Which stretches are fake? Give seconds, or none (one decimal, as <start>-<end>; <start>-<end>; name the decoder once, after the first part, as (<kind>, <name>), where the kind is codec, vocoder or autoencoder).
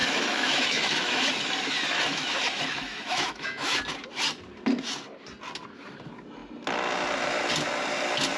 0.0-1.3 (autoencoder, DAC-VAE); 2.1-3.8